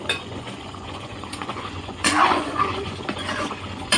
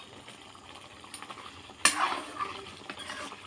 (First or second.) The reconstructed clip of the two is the first